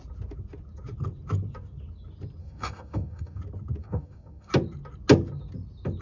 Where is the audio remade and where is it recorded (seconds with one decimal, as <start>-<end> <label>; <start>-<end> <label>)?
0.0-2.4 recorded; 2.4-3.4 remade; 3.4-3.8 recorded; 3.8-4.5 remade; 4.5-6.0 recorded